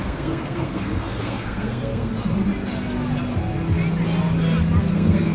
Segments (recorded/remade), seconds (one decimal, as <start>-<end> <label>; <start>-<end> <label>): 0.0-2.1 remade; 2.1-4.8 recorded; 4.8-5.3 remade